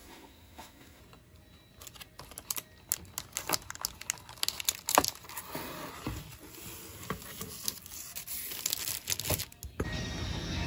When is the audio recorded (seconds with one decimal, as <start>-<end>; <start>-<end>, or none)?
1.0-10.7